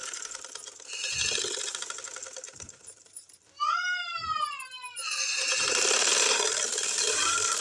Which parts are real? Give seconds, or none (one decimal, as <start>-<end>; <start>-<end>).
0.0-7.6